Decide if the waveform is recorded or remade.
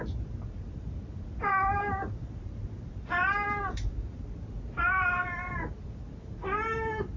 remade